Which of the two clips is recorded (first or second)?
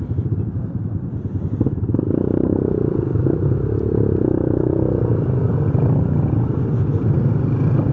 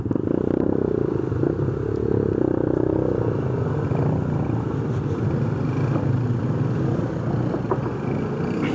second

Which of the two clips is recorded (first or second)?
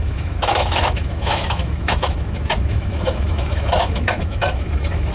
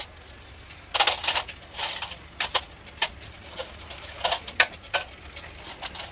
second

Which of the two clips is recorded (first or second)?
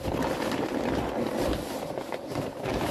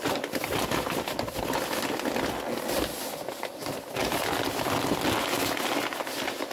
second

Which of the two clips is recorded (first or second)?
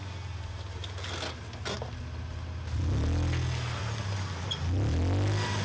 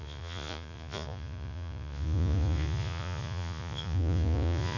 first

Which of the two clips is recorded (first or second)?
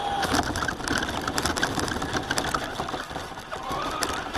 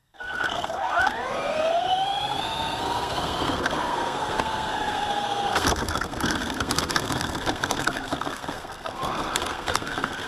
first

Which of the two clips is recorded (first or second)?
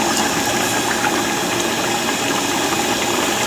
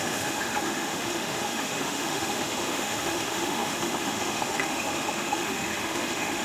first